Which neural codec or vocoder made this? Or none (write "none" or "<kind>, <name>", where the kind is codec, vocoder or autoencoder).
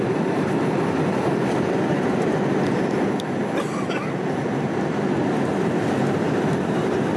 none